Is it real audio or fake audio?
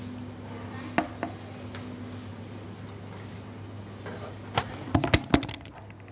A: real